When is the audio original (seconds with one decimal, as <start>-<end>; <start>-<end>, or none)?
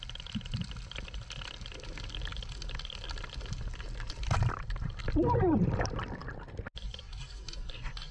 0.0-8.1